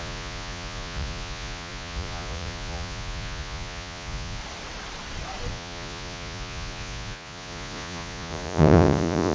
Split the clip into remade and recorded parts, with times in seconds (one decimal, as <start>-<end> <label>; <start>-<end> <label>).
0.0-4.4 remade; 4.4-5.5 recorded; 5.5-9.3 remade